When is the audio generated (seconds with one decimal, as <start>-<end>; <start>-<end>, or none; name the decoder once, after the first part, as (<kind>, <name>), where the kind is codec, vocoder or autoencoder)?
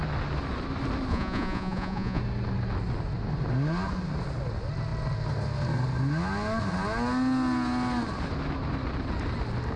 1.1-2.2 (vocoder, Vocos)